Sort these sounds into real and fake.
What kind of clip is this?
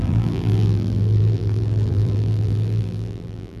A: fake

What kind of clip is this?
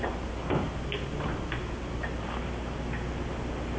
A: real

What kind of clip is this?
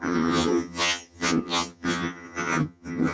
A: fake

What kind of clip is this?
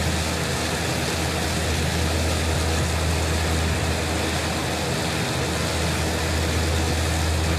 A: real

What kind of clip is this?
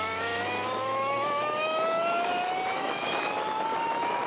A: fake